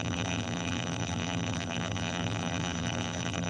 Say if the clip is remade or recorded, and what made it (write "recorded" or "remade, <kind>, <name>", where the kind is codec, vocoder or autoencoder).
remade, vocoder, BigVGAN v2